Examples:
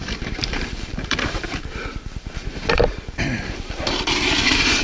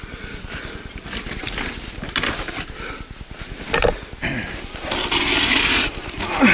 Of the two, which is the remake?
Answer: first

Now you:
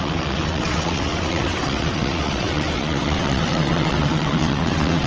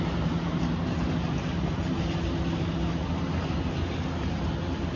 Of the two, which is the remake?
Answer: first